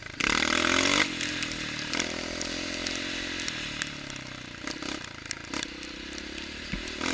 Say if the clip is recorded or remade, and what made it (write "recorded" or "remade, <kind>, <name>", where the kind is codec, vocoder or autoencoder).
recorded